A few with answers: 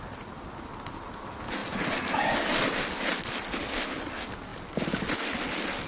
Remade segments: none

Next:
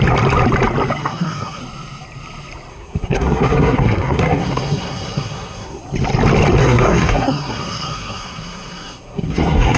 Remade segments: 1.0-1.6 (codec, SNAC); 2.7-5.8; 6.6-9.8